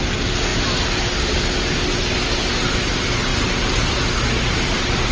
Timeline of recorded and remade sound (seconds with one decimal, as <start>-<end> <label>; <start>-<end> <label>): 0.0-5.1 recorded